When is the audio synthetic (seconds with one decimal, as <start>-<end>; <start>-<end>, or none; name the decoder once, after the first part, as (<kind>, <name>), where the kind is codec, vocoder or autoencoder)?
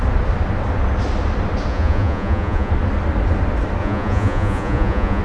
1.7-2.7 (vocoder, Vocos); 3.8-5.2